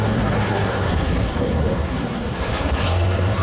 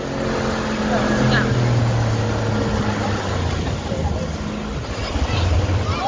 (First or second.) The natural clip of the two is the second